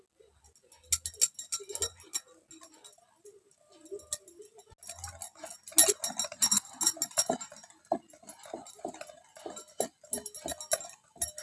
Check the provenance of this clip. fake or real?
real